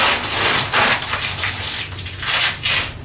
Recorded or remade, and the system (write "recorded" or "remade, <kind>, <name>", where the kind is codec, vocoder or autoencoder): recorded